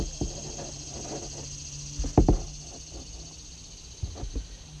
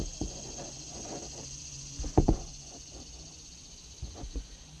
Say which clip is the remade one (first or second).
second